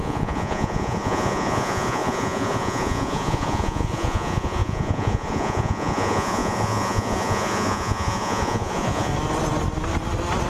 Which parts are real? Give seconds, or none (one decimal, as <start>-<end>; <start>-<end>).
9.1-10.5